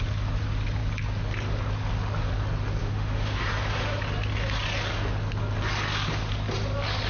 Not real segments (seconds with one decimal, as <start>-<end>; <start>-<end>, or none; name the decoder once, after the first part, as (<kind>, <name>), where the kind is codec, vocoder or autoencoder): 2.8-3.4 (autoencoder, DAC-VAE)